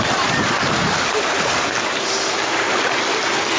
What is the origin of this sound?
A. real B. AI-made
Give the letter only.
A